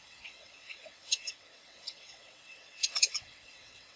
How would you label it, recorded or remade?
remade